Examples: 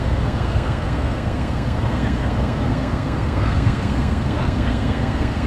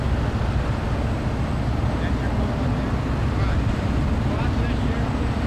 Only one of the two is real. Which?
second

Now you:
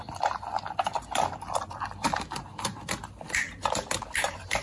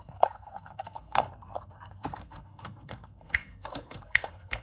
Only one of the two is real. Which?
first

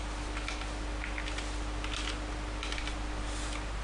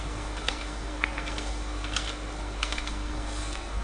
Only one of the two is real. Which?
first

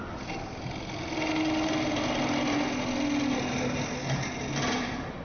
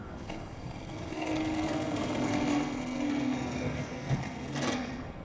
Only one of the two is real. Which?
first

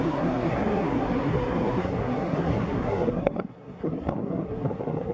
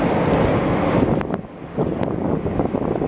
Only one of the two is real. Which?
second